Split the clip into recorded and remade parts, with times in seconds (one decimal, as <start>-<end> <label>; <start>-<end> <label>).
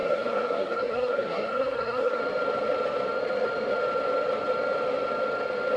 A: 0.0-2.2 remade; 2.2-5.8 recorded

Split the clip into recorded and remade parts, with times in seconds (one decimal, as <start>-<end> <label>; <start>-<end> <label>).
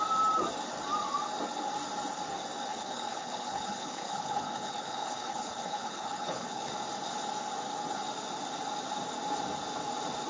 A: 0.0-2.7 recorded; 2.7-6.7 remade; 6.7-10.3 recorded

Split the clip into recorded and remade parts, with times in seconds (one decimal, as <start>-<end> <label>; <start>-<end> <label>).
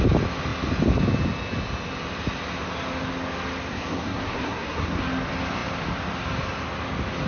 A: 0.0-3.7 recorded; 3.7-5.0 remade; 5.0-7.3 recorded